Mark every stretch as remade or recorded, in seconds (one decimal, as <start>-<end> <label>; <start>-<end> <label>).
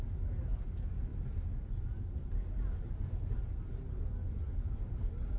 0.0-5.4 recorded